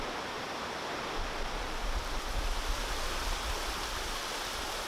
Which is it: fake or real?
real